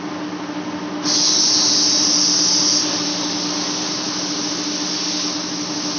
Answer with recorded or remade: recorded